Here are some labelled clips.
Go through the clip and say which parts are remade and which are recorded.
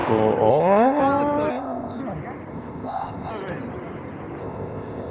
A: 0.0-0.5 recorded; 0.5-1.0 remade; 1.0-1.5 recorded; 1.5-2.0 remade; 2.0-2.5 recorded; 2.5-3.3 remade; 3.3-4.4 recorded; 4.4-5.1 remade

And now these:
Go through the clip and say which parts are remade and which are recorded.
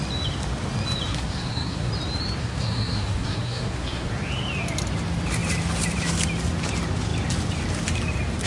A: 0.0-1.1 recorded; 1.1-1.9 remade; 1.9-2.4 recorded; 2.4-4.1 remade; 4.1-8.5 recorded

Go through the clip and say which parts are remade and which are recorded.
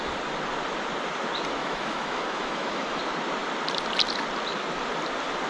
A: 0.0-1.6 recorded; 1.6-3.0 remade; 3.0-5.5 recorded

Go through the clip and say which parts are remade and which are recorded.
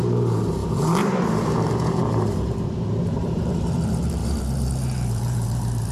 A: 0.0-5.9 remade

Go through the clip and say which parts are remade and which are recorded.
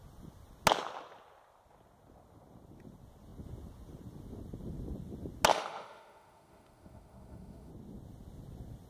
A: 0.0-5.5 recorded; 5.5-7.7 remade; 7.7-8.9 recorded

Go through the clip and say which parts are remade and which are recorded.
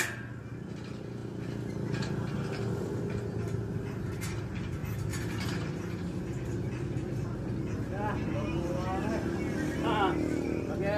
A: 0.0-4.8 recorded; 4.8-6.2 remade; 6.2-11.0 recorded